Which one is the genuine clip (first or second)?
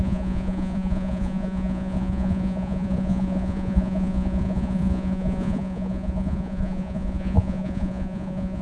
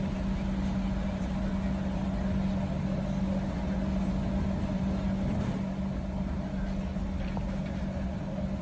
second